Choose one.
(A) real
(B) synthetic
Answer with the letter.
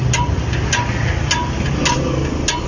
A